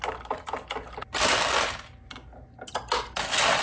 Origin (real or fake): real